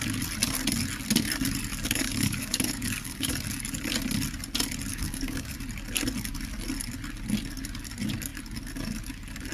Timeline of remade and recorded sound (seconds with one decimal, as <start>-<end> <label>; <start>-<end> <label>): 0.0-1.7 recorded; 1.7-3.3 remade; 3.3-4.9 recorded; 4.9-5.5 remade; 5.5-9.5 recorded